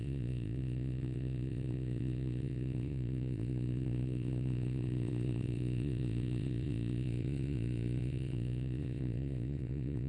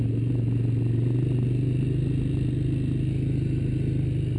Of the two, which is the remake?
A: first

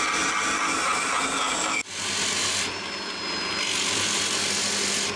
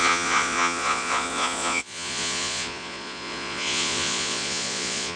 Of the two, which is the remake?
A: second